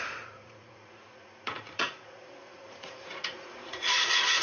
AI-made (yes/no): yes